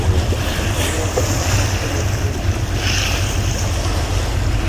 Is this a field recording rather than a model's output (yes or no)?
yes